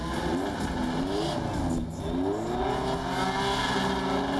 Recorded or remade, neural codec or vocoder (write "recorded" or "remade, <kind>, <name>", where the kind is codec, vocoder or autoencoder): recorded